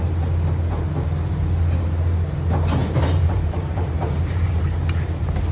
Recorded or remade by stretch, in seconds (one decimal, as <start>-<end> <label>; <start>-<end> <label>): 0.0-2.8 recorded; 2.8-4.6 remade; 4.6-5.5 recorded